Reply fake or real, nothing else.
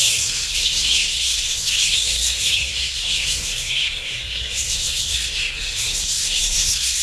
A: fake